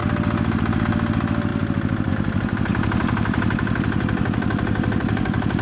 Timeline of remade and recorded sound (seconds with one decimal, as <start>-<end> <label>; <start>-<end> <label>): 0.0-5.6 recorded